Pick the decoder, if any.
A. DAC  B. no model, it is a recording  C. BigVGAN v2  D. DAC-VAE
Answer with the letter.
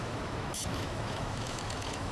D